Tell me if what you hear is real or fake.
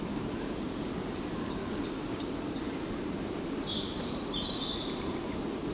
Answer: fake